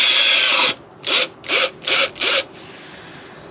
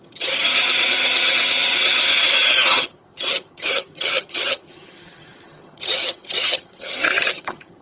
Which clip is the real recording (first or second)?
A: first